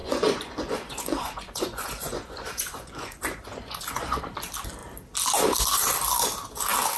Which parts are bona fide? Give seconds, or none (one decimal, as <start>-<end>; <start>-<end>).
4.2-7.0